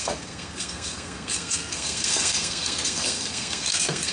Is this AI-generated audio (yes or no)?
yes